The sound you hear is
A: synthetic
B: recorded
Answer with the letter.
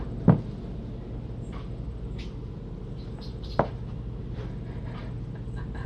B